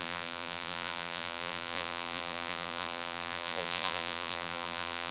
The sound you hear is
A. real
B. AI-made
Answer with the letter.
B